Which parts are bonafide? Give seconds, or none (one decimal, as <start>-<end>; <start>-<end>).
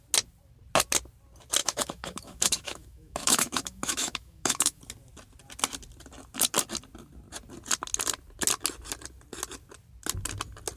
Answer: 0.0-1.6; 4.8-10.8